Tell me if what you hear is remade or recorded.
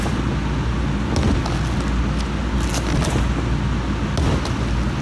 recorded